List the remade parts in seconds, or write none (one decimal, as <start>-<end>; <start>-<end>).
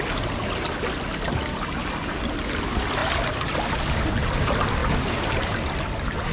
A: none